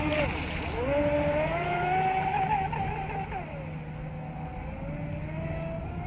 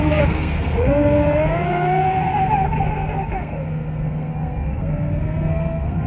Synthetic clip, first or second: second